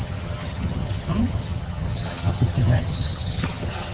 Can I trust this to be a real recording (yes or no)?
no